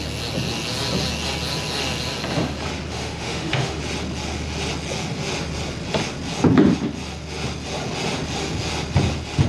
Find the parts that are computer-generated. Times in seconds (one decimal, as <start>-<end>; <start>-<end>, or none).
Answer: 2.9-3.8